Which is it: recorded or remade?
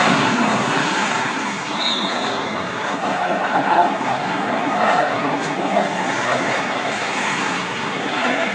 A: remade